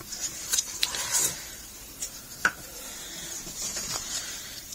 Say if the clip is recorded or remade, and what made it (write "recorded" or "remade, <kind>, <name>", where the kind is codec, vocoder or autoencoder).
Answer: remade, vocoder, BigVGAN v2